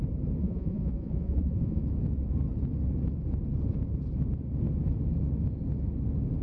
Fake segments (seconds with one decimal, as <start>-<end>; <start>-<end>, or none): 0.4-1.8